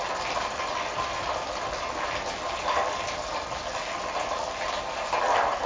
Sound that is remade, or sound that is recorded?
recorded